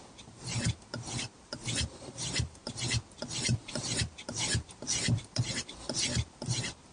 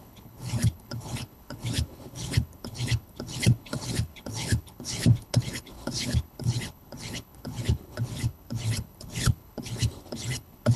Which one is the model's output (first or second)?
second